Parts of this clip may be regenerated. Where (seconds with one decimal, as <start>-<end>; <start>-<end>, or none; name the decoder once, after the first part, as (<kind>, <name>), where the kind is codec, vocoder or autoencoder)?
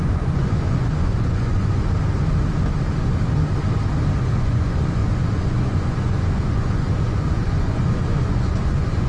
0.0-1.8 (vocoder, Vocos); 4.2-9.1